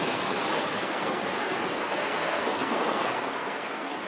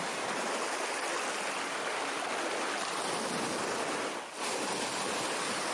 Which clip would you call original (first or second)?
second